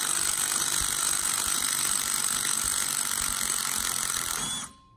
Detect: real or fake real